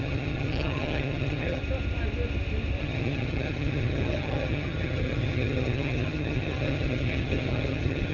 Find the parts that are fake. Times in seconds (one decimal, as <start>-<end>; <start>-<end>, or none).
0.0-1.6; 2.8-8.1